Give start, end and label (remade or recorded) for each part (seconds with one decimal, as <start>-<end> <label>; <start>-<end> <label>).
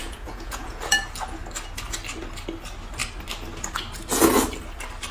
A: 0.0-0.8 remade; 0.8-5.1 recorded